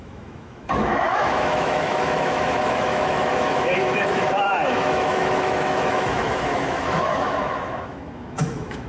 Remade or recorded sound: remade